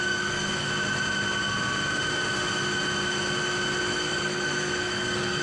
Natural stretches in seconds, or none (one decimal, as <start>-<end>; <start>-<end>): 0.7-3.9